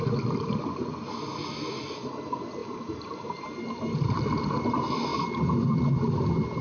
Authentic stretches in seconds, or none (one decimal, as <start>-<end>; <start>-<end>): 0.0-2.6; 4.2-6.6